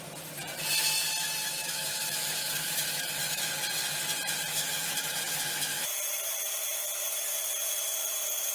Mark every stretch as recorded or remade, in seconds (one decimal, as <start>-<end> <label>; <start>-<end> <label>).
0.0-1.4 recorded; 1.4-3.5 remade; 3.5-4.5 recorded; 4.5-5.9 remade; 5.9-8.5 recorded